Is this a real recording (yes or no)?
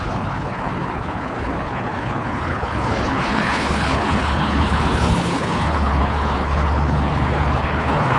no